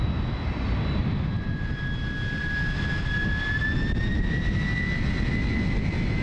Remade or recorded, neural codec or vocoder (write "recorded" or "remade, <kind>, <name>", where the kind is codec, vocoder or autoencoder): recorded